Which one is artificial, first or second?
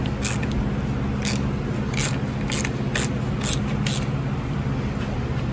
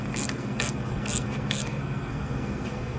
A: second